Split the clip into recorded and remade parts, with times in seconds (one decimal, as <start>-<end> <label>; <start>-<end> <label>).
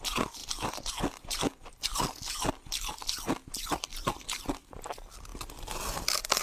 0.0-6.4 recorded